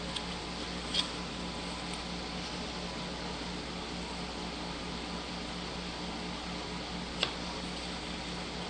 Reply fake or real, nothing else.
real